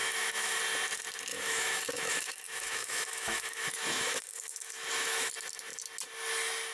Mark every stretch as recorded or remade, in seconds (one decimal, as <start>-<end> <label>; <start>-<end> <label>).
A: 0.0-0.6 remade; 0.6-1.3 recorded; 1.3-5.3 remade; 5.3-6.7 recorded